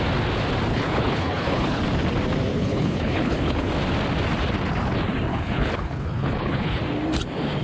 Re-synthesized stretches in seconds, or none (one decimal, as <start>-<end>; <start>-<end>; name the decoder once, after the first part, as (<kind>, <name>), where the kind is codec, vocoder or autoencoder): 0.7-1.8 (codec, HILCodec); 2.5-3.7; 5.3-6.8